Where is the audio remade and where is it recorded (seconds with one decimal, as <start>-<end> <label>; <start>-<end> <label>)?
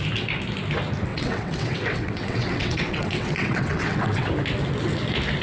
0.0-1.1 recorded; 1.1-4.3 remade; 4.3-5.4 recorded